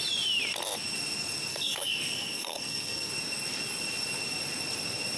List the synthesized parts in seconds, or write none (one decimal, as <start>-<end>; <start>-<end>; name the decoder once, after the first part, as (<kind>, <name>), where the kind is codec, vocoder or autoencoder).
1.5-3.1 (codec, SNAC)